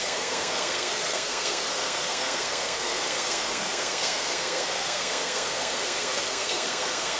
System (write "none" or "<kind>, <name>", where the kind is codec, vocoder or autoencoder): codec, SNAC